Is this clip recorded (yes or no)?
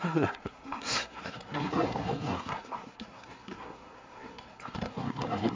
no